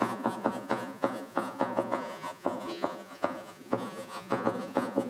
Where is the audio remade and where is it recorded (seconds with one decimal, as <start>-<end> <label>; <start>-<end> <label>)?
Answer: 0.0-5.1 remade